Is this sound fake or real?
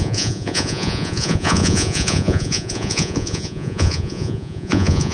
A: fake